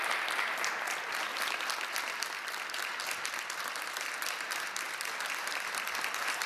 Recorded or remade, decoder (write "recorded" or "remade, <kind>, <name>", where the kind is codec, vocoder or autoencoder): recorded